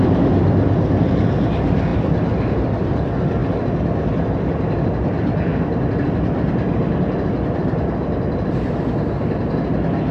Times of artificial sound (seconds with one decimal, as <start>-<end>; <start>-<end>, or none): none